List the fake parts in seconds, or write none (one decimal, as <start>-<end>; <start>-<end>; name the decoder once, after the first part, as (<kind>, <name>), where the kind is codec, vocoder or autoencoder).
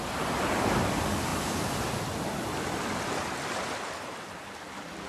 none